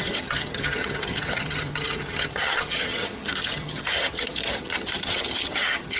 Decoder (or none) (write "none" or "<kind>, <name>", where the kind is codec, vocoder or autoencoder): vocoder, HiFi-GAN